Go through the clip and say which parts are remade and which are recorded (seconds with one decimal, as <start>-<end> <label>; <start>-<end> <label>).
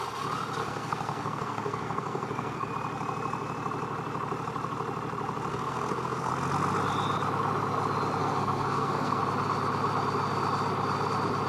0.0-0.6 recorded; 0.6-2.7 remade; 2.7-5.5 recorded; 5.5-6.3 remade; 6.3-8.2 recorded; 8.2-9.2 remade; 9.2-11.5 recorded